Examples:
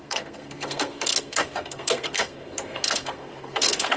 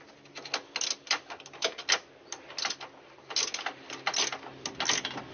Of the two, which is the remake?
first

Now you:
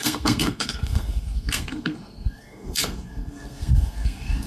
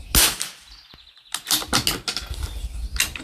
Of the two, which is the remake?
first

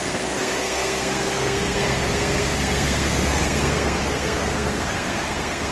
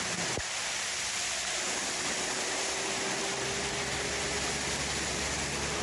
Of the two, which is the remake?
first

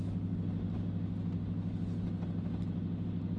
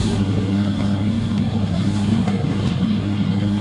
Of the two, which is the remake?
second